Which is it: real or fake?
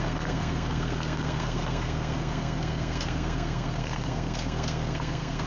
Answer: fake